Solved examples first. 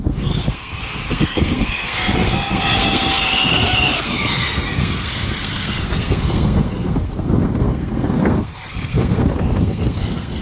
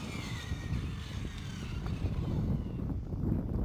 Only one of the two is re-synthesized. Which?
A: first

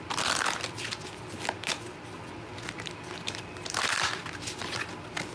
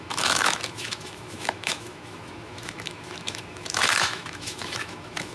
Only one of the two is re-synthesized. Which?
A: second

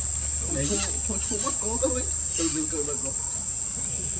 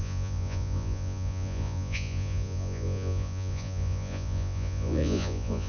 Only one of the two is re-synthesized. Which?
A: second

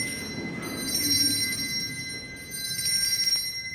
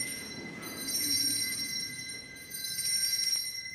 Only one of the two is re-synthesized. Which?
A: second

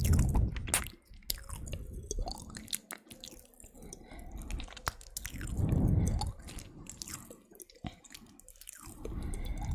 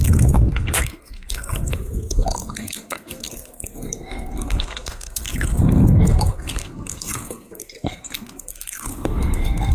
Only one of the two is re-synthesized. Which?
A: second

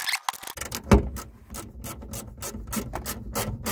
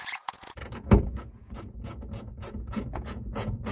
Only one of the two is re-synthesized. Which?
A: second